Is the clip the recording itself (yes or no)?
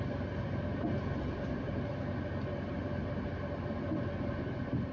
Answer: yes